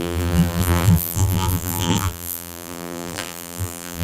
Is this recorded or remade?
remade